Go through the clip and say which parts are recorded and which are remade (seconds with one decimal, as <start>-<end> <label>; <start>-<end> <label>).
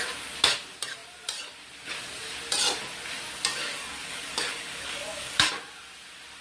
0.0-3.5 recorded; 3.5-5.5 remade; 5.5-6.4 recorded